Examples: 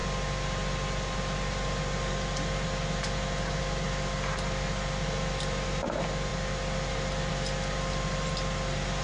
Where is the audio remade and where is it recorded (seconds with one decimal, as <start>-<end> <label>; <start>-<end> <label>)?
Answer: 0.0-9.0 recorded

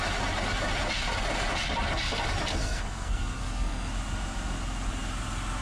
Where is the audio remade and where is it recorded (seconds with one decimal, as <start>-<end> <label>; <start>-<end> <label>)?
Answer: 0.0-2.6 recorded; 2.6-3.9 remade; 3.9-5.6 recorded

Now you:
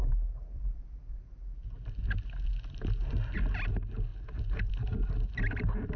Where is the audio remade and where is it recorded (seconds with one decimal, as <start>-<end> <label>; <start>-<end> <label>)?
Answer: 0.0-6.0 recorded